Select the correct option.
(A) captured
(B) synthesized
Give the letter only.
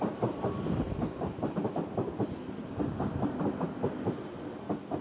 A